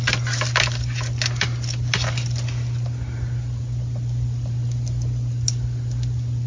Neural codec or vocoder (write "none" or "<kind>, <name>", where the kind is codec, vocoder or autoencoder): none